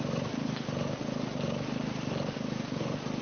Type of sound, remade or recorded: recorded